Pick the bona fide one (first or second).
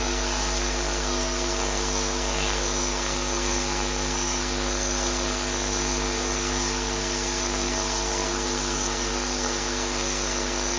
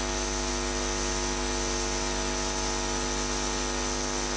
second